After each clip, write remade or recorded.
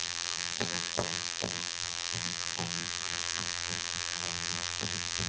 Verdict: remade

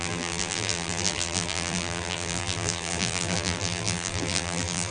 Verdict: remade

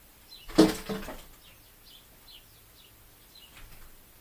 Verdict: recorded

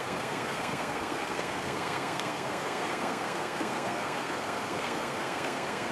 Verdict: remade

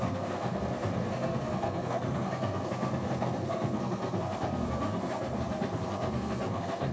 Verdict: remade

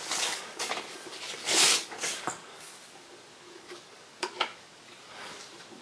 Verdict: remade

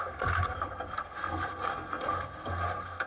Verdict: remade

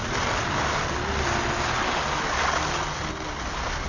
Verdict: recorded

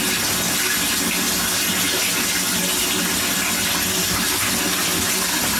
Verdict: recorded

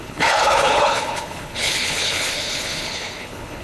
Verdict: remade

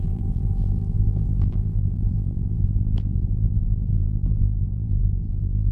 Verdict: remade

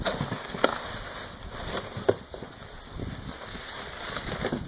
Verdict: recorded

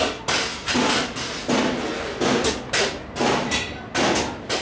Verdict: recorded